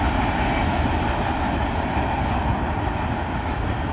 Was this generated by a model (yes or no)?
no